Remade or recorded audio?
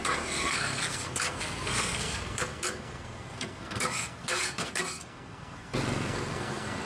remade